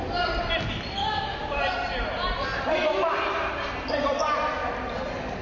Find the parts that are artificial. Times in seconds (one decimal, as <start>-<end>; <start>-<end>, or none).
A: 1.0-1.6